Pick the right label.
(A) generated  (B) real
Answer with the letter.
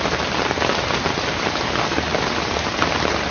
B